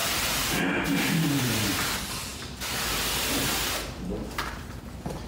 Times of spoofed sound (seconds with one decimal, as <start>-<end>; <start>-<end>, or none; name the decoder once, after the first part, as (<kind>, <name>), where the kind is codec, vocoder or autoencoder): none